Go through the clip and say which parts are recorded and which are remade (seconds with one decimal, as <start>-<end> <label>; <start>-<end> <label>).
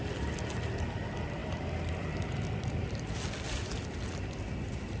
0.0-1.4 recorded; 1.4-4.4 remade; 4.4-5.0 recorded